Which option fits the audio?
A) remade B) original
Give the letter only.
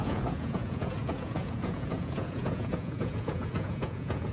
A